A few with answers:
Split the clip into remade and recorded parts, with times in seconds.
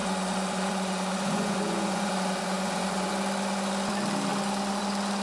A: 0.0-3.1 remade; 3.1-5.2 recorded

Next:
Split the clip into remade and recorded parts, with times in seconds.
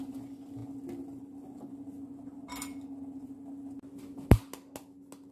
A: 0.0-5.3 recorded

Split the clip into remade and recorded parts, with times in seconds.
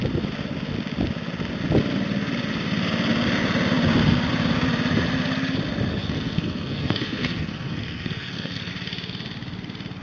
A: 0.0-5.9 recorded; 5.9-8.7 remade; 8.7-10.0 recorded